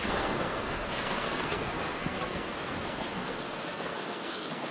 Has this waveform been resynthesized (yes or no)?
yes